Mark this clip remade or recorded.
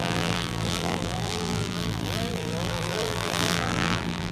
remade